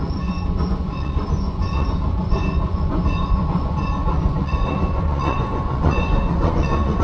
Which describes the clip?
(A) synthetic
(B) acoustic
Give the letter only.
A